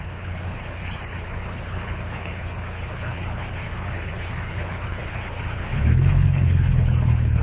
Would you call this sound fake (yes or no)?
yes